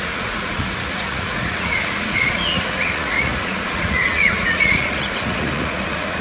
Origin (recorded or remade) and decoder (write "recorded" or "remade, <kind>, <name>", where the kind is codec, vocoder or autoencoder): remade, vocoder, Vocos